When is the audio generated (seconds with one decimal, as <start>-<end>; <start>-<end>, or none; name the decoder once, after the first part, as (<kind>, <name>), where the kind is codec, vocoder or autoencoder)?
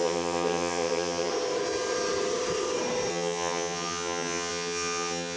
0.0-1.3 (vocoder, HiFi-GAN); 3.1-5.4